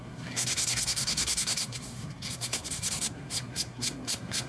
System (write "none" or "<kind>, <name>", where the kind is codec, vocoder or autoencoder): codec, SNAC